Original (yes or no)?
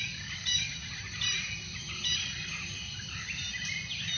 yes